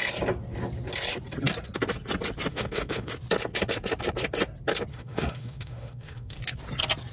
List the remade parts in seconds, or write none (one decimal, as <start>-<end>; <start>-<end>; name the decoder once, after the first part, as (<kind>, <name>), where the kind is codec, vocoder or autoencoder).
2.5-3.1 (autoencoder, DAC-VAE); 4.9-6.4